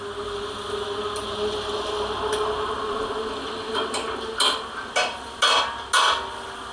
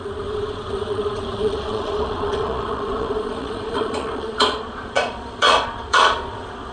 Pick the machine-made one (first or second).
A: second